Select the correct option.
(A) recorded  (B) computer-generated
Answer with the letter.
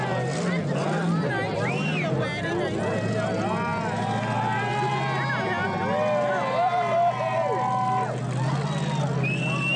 A